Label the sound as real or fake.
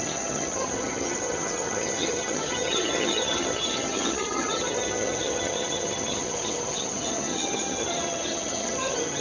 fake